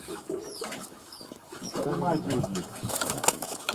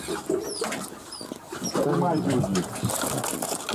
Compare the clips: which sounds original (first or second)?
second